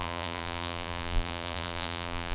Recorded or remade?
remade